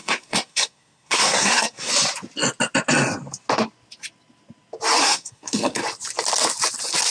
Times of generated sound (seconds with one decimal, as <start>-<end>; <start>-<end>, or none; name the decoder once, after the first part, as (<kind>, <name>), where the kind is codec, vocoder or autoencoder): 0.0-1.9 (codec, SNAC); 5.0-5.8